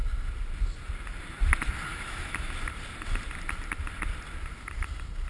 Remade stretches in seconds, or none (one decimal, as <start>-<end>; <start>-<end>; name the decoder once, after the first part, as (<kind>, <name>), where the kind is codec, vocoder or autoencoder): 1.9-2.5 (autoencoder, DAC-VAE)